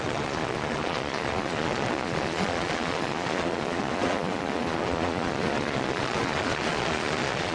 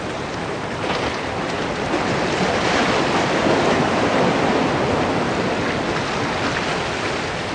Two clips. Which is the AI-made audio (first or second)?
first